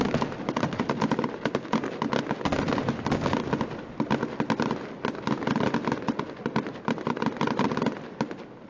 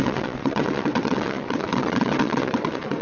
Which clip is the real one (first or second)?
first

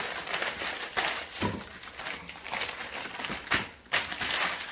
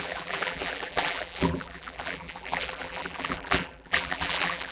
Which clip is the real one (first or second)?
first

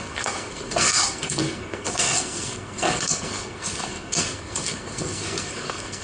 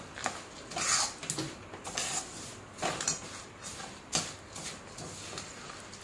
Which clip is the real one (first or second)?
second